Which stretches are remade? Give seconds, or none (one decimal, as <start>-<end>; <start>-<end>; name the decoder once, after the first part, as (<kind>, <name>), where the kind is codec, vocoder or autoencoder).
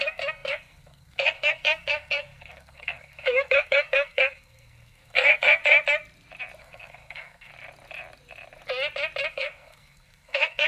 0.0-5.6 (codec, SNAC); 6.6-7.5; 9.3-10.7